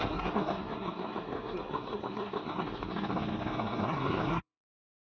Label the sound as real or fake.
fake